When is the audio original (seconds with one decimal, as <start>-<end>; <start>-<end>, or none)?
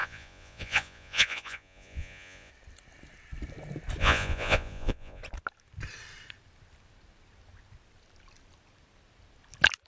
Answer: 2.5-4.0; 5.2-9.9